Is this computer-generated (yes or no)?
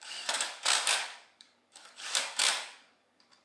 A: yes